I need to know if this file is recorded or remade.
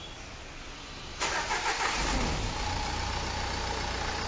recorded